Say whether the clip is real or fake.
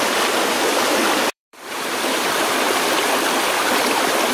fake